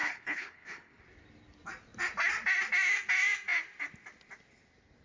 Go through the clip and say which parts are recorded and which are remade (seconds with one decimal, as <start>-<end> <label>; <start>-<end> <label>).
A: 0.0-1.0 remade; 1.0-5.0 recorded